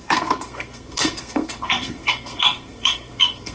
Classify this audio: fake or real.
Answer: fake